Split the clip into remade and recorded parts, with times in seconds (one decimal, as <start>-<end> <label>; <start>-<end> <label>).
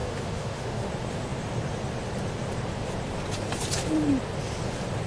0.0-0.9 remade; 0.9-5.1 recorded